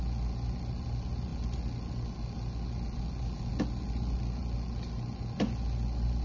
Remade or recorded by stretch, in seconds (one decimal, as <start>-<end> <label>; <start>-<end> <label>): 0.0-6.2 recorded

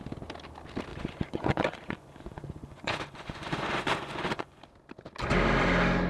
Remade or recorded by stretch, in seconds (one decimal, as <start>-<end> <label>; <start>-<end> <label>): 0.0-0.9 recorded; 0.9-4.6 remade; 4.6-6.1 recorded